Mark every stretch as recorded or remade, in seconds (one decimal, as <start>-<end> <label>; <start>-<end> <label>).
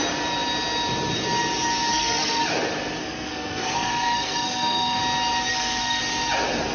0.0-1.9 recorded; 1.9-2.4 remade; 2.4-3.0 recorded; 3.0-5.0 remade; 5.0-5.5 recorded; 5.5-6.0 remade; 6.0-6.7 recorded